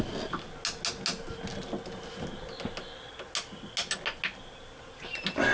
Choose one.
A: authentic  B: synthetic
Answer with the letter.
A